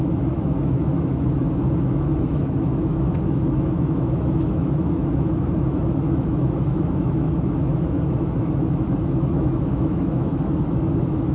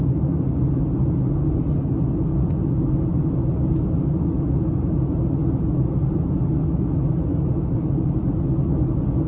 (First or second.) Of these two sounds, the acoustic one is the second